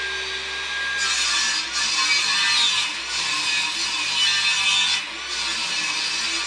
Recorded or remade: recorded